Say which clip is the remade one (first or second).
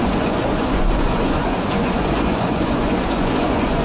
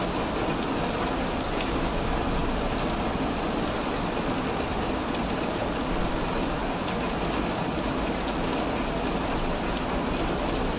first